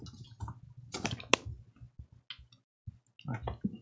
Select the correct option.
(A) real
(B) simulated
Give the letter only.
A